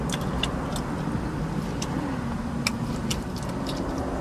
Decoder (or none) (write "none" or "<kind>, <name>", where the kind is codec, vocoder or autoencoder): none